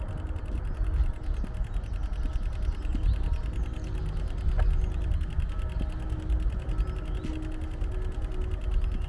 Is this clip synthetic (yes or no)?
no